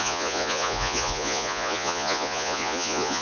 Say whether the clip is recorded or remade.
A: remade